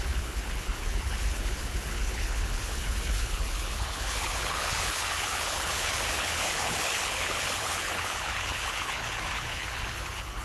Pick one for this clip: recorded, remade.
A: remade